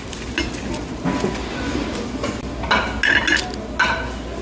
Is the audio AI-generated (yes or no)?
no